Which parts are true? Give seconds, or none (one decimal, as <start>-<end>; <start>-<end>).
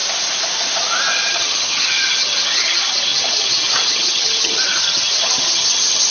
0.0-1.3